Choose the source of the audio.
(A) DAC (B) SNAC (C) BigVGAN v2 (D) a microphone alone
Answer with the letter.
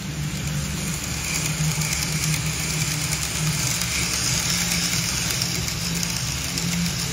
D